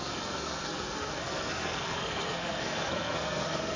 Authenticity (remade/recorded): remade